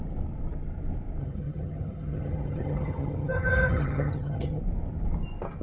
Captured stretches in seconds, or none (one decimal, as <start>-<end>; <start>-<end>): 0.0-1.2; 4.6-5.6